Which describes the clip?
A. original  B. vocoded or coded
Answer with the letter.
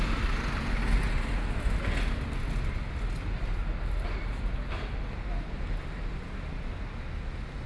A